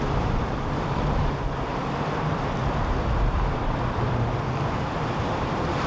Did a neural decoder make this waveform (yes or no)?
yes